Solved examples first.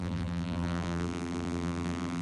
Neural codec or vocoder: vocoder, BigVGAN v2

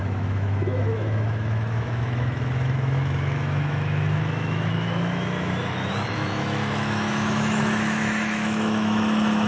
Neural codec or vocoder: autoencoder, DAC-VAE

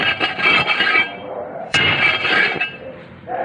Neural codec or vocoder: vocoder, BigVGAN v2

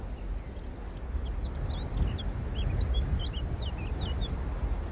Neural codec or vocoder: none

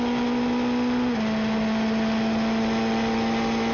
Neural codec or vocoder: none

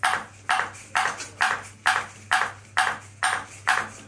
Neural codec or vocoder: none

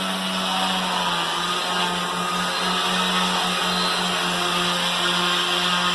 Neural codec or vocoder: none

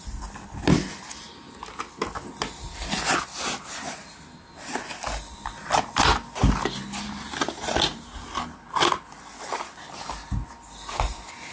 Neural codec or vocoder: none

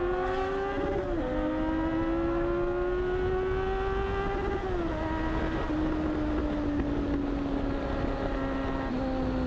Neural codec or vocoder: none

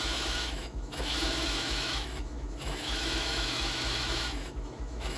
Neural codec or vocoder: autoencoder, DAC-VAE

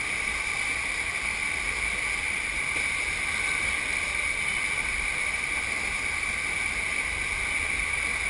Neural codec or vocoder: none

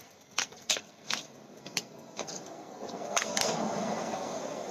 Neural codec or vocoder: codec, SNAC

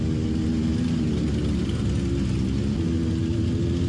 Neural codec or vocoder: none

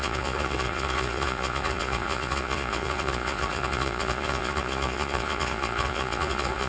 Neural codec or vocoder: vocoder, Vocos